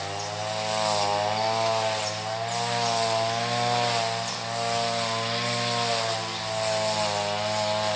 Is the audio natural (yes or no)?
yes